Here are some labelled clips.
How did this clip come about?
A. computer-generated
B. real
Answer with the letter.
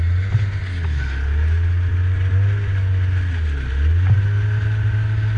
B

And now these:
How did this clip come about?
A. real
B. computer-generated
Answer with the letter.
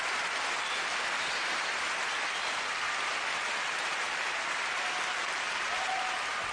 A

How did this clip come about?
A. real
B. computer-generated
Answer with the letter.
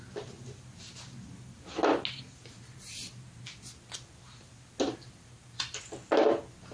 A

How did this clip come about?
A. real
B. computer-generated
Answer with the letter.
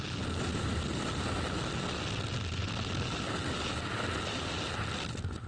A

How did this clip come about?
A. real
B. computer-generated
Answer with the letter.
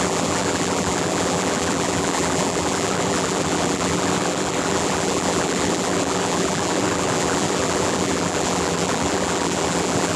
B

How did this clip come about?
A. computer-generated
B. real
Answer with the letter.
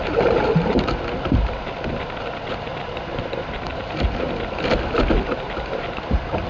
B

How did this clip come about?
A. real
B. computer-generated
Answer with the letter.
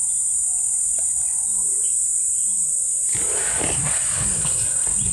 A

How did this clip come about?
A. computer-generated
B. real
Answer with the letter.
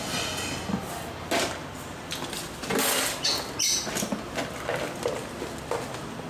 B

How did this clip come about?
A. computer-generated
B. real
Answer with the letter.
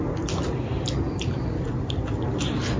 B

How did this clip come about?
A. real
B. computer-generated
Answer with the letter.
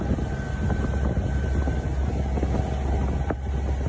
A